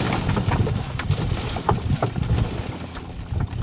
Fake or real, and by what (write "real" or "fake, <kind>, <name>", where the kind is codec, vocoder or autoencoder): real